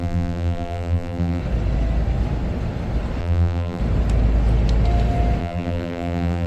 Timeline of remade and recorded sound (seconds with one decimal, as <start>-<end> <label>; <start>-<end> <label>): 0.0-1.4 remade; 1.4-3.2 recorded; 3.2-3.8 remade; 3.8-5.4 recorded; 5.4-6.5 remade